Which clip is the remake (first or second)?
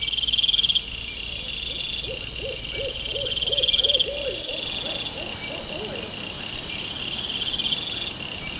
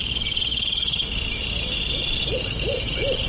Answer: second